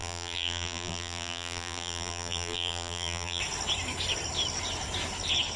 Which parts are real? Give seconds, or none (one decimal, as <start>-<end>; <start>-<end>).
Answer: 3.4-5.6